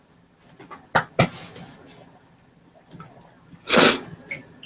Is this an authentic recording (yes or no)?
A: yes